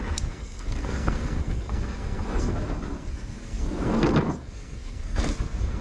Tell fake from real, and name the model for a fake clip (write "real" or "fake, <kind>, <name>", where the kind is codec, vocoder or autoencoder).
fake, codec, SNAC